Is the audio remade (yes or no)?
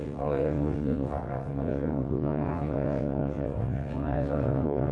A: yes